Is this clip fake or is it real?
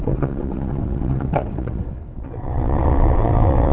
fake